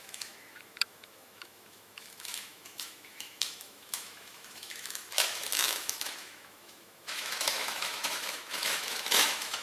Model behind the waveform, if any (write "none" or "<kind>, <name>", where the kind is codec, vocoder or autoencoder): autoencoder, DAC-VAE